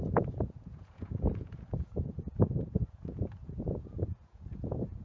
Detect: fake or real fake